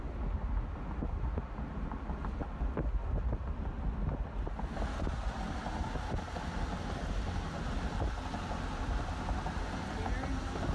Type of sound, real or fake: real